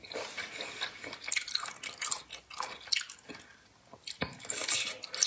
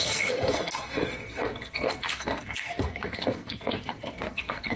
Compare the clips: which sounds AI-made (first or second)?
second